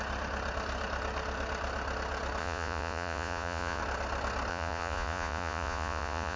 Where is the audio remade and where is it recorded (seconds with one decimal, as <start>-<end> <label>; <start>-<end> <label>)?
0.0-2.4 recorded; 2.4-3.8 remade; 3.8-4.5 recorded; 4.5-6.4 remade